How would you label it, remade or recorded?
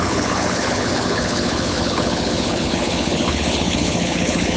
remade